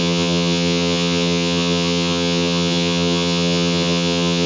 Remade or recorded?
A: remade